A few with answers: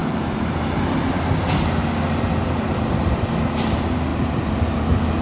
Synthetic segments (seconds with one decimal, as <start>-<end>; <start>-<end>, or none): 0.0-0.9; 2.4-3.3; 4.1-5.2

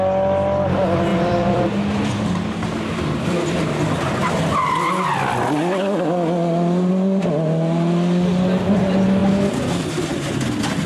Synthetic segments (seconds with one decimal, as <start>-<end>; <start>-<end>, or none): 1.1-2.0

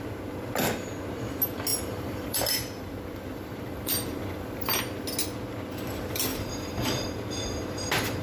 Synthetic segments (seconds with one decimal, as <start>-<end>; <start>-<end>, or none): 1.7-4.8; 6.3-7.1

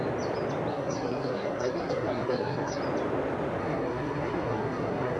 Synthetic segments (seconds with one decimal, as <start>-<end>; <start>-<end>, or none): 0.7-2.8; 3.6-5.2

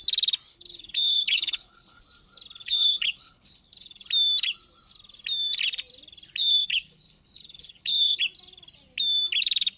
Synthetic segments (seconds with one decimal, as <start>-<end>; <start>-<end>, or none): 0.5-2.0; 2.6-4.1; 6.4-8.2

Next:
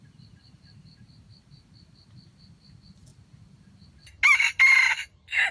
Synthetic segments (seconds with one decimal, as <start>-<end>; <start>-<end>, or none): none

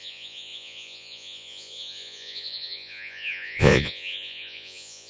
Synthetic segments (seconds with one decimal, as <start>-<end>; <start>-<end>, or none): 0.0-5.1